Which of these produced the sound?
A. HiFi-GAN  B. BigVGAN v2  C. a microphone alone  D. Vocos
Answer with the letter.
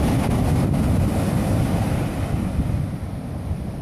C